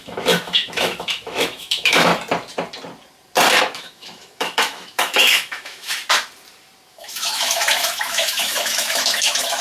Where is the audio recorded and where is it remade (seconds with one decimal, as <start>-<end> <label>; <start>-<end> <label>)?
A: 0.0-2.1 remade; 2.1-3.6 recorded; 3.6-6.0 remade; 6.0-6.9 recorded; 6.9-9.6 remade